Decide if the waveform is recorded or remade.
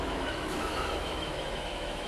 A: remade